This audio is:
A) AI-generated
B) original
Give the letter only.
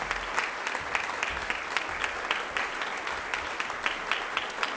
B